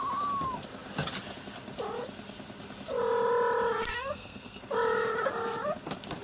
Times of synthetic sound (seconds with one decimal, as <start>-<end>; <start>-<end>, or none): 3.9-4.6